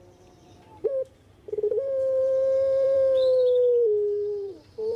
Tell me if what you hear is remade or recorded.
remade